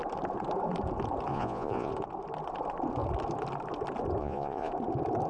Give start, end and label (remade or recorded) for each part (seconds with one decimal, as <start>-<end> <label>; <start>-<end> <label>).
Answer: 0.0-1.3 recorded; 1.3-1.9 remade; 1.9-4.2 recorded; 4.2-4.7 remade; 4.7-5.3 recorded